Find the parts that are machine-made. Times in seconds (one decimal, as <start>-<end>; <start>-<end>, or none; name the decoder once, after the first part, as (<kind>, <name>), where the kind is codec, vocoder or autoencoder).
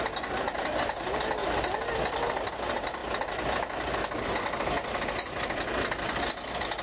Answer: none